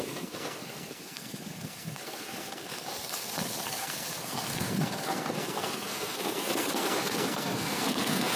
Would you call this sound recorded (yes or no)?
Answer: no